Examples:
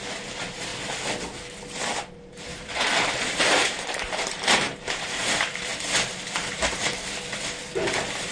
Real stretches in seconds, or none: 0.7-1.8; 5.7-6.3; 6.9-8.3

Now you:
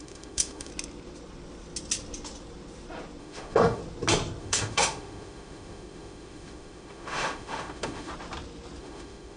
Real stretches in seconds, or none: 0.7-3.2; 3.8-4.4; 8.1-8.8

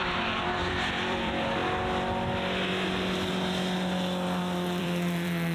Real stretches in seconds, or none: 1.6-4.8

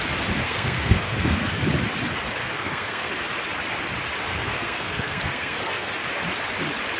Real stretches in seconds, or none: 0.0-0.4; 1.5-2.4; 3.1-4.3; 5.9-7.0

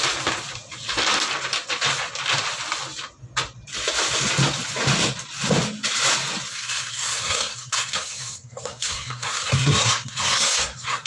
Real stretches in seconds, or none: 0.0-6.5

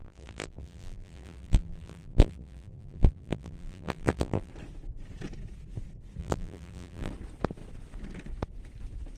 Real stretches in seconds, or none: 4.5-6.2; 7.1-9.2